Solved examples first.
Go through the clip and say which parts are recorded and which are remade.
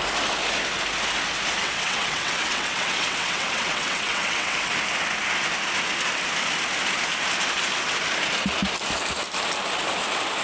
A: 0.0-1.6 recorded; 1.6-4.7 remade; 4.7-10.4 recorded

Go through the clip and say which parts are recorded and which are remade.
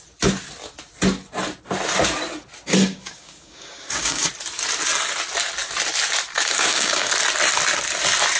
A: 0.0-2.9 recorded; 2.9-4.3 remade; 4.3-6.3 recorded; 6.3-7.1 remade; 7.1-8.4 recorded